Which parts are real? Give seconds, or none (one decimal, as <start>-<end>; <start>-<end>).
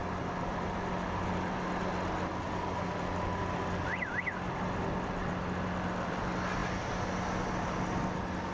0.0-8.5